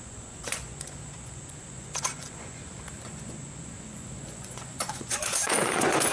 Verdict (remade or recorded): remade